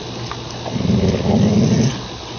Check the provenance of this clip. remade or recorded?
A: recorded